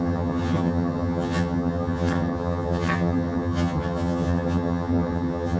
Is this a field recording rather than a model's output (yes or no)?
no